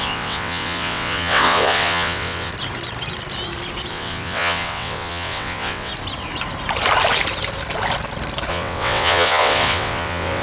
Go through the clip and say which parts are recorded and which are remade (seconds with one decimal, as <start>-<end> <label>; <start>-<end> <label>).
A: 0.0-2.5 remade; 2.5-3.9 recorded; 3.9-5.9 remade; 5.9-8.5 recorded; 8.5-10.4 remade